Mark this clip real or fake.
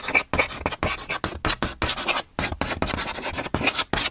real